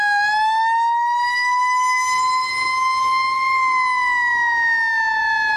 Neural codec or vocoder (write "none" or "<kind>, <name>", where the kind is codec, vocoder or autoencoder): none